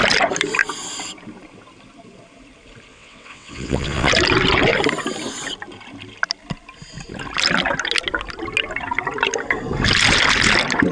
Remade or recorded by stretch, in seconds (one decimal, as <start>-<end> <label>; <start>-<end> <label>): 0.0-2.9 recorded; 2.9-4.1 remade; 4.1-10.9 recorded